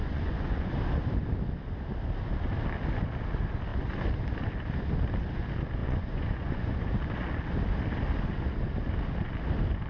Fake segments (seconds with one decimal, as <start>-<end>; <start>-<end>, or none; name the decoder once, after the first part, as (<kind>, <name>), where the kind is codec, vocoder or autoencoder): 0.0-0.7 (vocoder, Vocos); 5.8-6.9